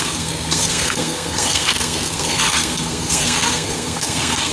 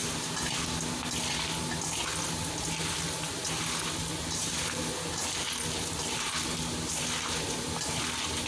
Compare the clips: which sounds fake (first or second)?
first